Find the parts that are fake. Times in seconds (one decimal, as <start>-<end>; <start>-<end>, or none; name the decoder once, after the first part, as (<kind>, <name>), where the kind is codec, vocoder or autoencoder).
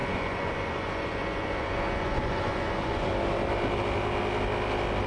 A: 0.0-3.1 (vocoder, Vocos)